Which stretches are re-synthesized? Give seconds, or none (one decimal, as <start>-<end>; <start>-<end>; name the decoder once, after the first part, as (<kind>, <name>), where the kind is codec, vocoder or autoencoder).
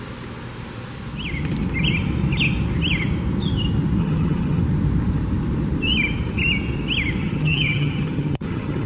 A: 4.0-4.6 (vocoder, HiFi-GAN); 7.2-8.9